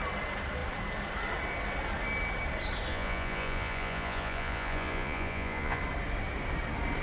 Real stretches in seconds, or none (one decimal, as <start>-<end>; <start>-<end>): 0.0-2.9; 5.8-7.0